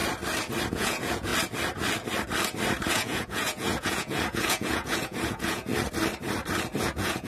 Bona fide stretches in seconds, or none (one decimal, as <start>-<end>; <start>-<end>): 0.0-0.7; 1.3-2.9; 5.7-6.8